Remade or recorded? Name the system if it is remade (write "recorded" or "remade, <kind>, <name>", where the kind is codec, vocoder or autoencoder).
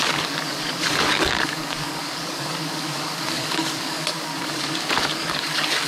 remade, codec, DAC